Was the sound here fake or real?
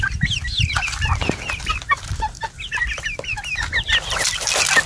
real